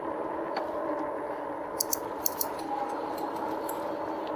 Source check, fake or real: real